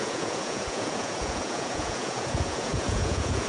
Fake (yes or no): yes